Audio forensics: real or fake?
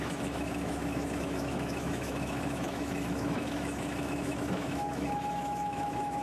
fake